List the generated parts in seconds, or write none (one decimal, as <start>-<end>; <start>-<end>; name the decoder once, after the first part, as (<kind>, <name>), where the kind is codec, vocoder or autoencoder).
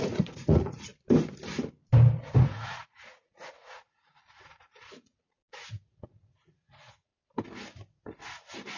0.0-0.9 (vocoder, Vocos); 2.4-7.1